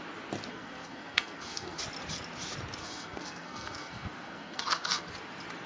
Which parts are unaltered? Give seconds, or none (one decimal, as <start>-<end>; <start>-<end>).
0.0-0.5; 1.8-2.8; 5.1-5.7